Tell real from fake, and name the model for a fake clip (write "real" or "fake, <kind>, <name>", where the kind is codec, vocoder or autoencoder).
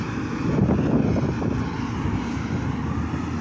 real